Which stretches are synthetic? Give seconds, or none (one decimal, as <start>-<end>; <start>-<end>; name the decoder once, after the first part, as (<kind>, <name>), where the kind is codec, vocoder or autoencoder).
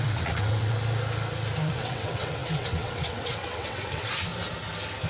0.0-0.8 (vocoder, WaveNeXt); 1.7-4.3